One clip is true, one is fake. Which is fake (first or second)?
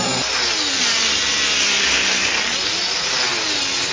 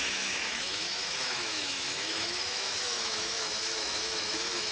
second